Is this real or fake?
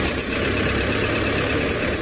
real